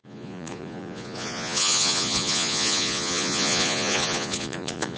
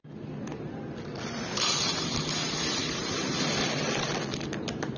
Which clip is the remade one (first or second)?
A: first